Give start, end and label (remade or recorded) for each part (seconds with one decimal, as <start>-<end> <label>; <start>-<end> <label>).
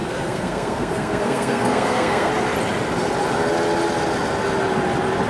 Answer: 0.0-2.3 remade; 2.3-5.3 recorded